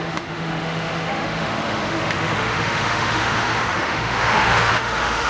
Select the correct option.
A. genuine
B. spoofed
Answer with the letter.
B